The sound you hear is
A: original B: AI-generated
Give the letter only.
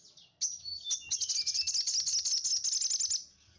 A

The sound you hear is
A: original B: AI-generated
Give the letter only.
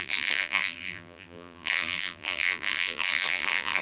B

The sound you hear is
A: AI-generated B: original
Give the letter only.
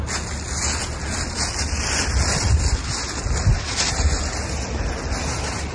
B